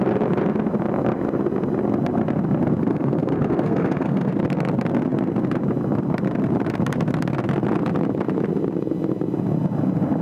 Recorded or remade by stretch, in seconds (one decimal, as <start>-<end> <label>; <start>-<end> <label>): 0.0-2.9 recorded; 2.9-4.3 remade; 4.3-10.2 recorded